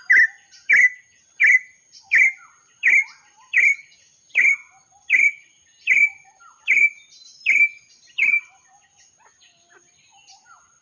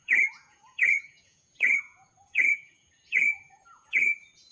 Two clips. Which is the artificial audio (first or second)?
second